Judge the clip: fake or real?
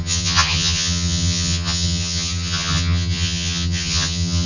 fake